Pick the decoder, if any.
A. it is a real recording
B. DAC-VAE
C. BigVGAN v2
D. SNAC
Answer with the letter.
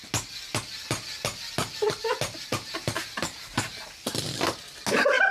A